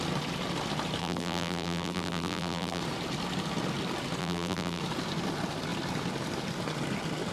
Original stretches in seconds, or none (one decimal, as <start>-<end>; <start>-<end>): 0.0-1.0; 2.8-4.2; 4.8-7.3